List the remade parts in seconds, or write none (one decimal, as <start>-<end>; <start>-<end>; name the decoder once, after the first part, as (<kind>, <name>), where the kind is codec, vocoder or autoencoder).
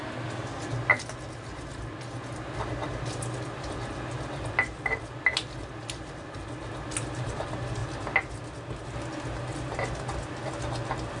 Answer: none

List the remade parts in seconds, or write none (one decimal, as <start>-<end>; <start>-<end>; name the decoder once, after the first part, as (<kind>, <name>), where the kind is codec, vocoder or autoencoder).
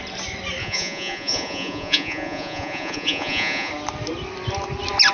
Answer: 0.6-3.7 (vocoder, Vocos)